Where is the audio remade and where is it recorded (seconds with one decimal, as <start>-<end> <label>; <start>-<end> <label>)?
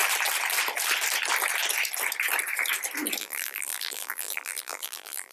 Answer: 0.0-3.2 recorded; 3.2-5.3 remade